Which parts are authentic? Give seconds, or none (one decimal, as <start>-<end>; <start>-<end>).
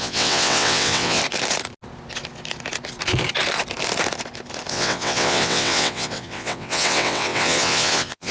1.2-4.7